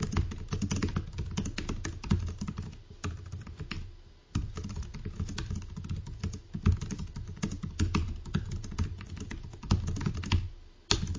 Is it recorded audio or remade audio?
recorded